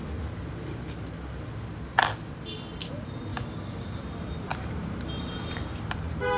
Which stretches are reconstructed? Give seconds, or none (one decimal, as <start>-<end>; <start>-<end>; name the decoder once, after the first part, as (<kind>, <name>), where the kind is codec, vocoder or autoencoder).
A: 3.3-4.0 (codec, DAC)

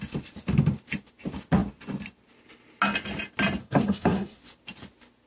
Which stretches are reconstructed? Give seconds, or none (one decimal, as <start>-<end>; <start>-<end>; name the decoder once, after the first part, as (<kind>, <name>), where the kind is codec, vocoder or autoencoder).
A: 3.6-4.4 (codec, SNAC)

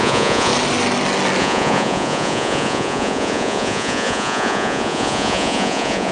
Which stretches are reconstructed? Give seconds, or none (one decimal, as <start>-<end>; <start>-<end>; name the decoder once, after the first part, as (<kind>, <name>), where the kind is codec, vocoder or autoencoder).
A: 0.0-0.5 (vocoder, Vocos); 1.4-6.1

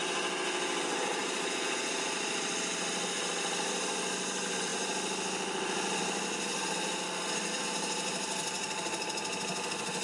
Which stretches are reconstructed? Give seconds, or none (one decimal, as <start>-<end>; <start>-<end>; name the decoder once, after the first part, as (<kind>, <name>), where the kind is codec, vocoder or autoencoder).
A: 1.2-4.2 (vocoder, BigVGAN v2)